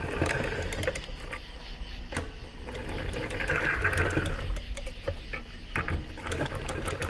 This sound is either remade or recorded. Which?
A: recorded